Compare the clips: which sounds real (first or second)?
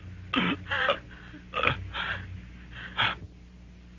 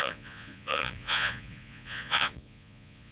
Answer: first